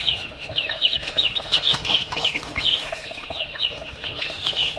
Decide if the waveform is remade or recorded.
remade